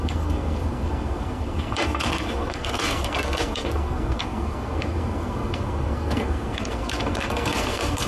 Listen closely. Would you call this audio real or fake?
fake